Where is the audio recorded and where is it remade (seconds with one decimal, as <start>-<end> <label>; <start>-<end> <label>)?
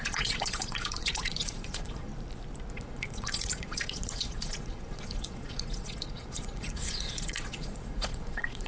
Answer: 0.0-2.1 remade; 2.1-2.7 recorded; 2.7-8.7 remade